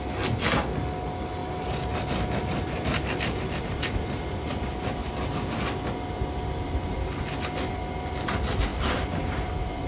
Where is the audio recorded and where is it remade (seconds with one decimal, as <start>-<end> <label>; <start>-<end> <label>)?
0.0-1.4 recorded; 1.4-5.3 remade; 5.3-8.7 recorded; 8.7-9.5 remade; 9.5-9.9 recorded